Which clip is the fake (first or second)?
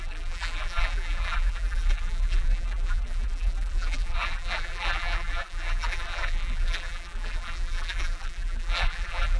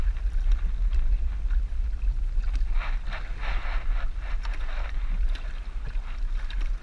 first